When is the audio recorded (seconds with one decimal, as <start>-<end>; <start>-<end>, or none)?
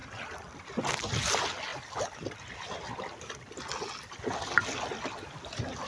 0.0-5.9